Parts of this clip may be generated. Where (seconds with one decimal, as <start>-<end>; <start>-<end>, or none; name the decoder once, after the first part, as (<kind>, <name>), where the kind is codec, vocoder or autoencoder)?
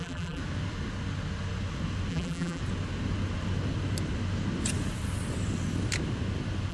0.0-0.4 (vocoder, BigVGAN v2); 2.1-2.6